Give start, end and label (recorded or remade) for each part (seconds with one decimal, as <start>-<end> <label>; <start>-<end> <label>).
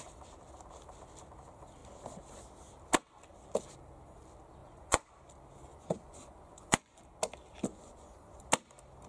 0.0-4.6 recorded; 4.6-5.1 remade; 5.1-5.7 recorded; 5.7-7.0 remade; 7.0-7.7 recorded; 7.7-8.4 remade; 8.4-9.1 recorded